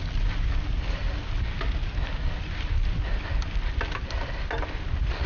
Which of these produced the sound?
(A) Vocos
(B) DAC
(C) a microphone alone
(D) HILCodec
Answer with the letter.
C